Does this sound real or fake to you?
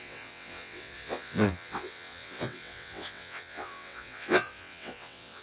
fake